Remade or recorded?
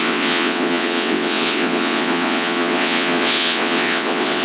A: remade